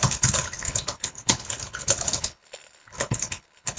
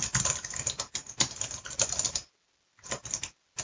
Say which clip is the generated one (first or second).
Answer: first